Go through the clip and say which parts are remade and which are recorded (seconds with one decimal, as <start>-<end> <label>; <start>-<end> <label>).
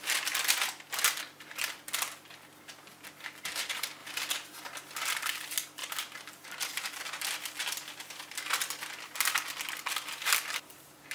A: 0.0-11.1 recorded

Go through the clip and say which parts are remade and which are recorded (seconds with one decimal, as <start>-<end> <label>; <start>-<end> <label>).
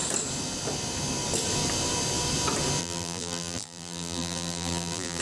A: 0.0-2.8 recorded; 2.8-5.2 remade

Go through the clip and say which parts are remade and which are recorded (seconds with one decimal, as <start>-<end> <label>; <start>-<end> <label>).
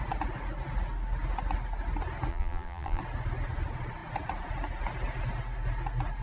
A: 0.0-2.3 recorded; 2.3-3.0 remade; 3.0-6.2 recorded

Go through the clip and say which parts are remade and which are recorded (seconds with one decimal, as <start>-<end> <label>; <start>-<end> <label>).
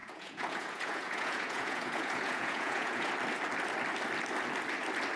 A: 0.0-3.1 remade; 3.1-5.2 recorded